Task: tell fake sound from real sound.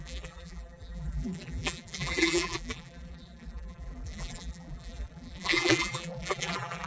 fake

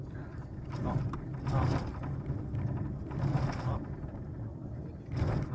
real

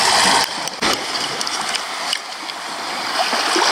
real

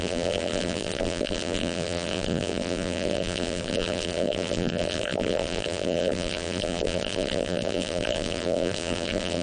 fake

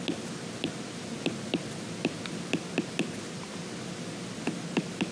real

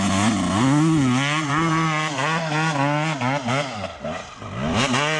real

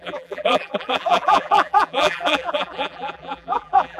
fake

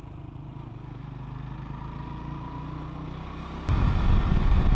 real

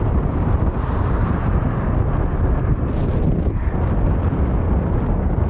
fake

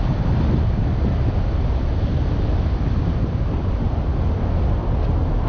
real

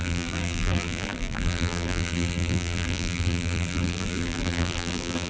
fake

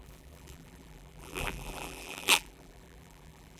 fake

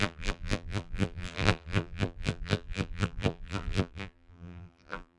fake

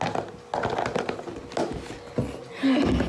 real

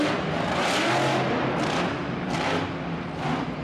real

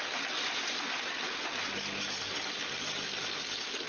real